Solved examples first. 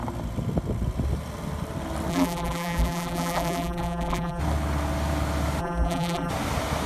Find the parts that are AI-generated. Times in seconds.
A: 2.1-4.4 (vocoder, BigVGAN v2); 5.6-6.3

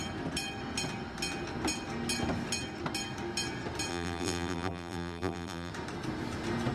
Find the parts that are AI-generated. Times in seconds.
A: 3.9-5.7 (vocoder, BigVGAN v2)

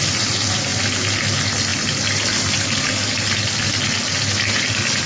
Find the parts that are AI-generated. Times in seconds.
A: none

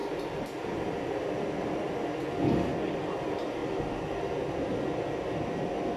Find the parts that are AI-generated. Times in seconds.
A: 0.0-1.0 (vocoder, BigVGAN v2)